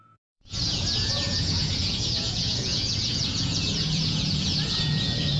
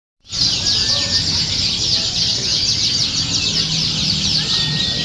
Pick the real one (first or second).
second